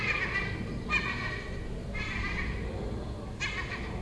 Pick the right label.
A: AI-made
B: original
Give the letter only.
B